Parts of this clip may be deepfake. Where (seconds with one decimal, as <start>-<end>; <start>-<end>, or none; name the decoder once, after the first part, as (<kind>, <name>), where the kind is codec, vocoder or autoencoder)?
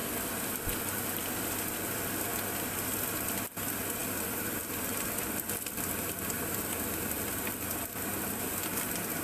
0.8-2.3 (vocoder, BigVGAN v2); 3.1-9.2